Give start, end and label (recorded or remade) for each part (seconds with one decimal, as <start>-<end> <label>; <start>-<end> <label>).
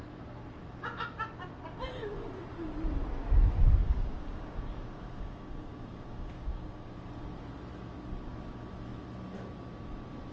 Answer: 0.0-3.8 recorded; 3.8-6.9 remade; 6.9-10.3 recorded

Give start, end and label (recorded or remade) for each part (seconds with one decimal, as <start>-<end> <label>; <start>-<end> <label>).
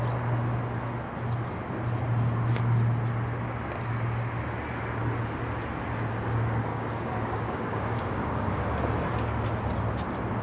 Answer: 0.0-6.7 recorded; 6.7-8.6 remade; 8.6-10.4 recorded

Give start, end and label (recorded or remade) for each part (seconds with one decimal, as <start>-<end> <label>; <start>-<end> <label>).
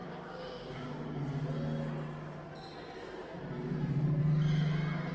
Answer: 0.0-1.2 remade; 1.2-5.1 recorded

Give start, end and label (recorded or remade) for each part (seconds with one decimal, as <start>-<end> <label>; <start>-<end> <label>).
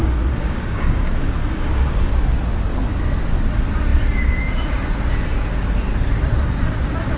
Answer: 0.0-2.1 remade; 2.1-7.2 recorded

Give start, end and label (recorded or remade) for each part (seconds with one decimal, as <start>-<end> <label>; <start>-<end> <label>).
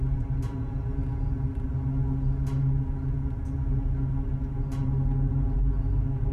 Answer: 0.0-6.3 recorded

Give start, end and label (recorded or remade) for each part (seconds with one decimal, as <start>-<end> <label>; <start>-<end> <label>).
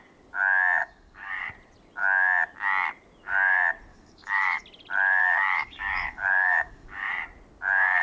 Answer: 0.0-0.8 recorded; 0.8-1.5 remade; 1.5-3.9 recorded; 3.9-4.6 remade; 4.6-5.2 recorded; 5.2-7.1 remade; 7.1-8.0 recorded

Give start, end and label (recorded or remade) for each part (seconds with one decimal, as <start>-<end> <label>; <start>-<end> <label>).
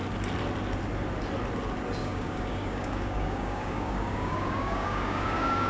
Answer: 0.0-2.0 recorded; 2.0-5.7 remade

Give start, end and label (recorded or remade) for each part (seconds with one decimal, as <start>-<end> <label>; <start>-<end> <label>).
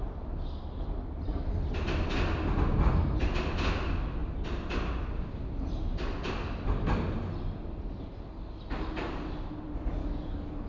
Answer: 0.0-10.0 recorded; 10.0-10.7 remade